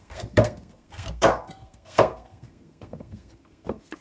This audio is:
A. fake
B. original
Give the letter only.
A